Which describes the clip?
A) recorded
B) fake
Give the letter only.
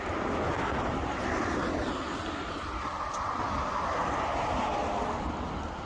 A